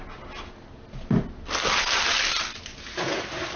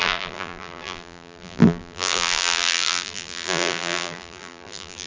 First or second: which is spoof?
second